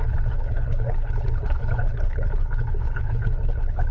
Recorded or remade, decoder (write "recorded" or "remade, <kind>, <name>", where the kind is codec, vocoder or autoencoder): remade, codec, HILCodec